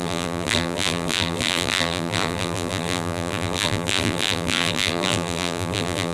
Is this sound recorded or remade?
remade